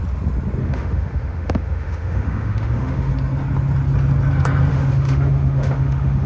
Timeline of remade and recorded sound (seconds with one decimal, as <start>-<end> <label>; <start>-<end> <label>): 0.0-0.6 recorded; 0.6-3.1 remade; 3.1-4.7 recorded; 4.7-6.3 remade